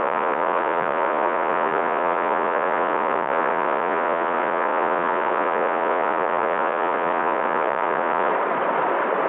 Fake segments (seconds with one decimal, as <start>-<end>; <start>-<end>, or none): 0.0-8.3